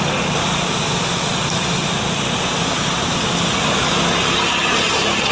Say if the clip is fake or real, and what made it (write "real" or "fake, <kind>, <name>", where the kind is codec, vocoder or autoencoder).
real